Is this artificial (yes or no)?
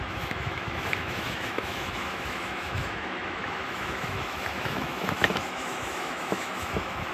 yes